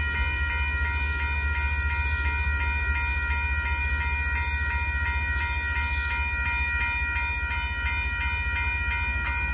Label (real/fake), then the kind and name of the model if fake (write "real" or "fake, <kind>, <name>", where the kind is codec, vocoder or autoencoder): real